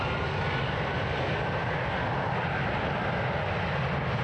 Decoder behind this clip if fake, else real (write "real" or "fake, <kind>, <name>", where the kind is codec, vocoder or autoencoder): real